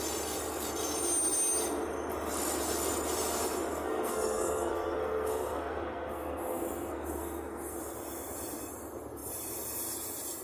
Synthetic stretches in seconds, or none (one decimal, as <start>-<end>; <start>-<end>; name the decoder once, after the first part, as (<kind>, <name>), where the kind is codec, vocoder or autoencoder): 3.7-7.8 (codec, SNAC)